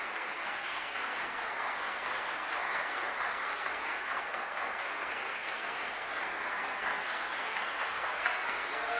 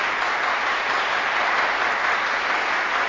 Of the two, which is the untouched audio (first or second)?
second